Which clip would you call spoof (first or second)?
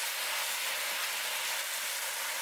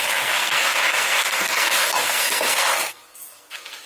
second